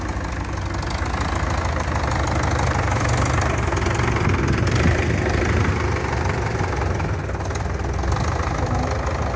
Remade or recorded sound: recorded